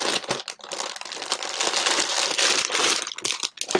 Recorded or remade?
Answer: recorded